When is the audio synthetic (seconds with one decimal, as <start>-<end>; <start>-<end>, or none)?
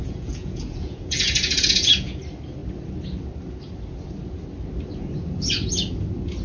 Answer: 0.0-2.2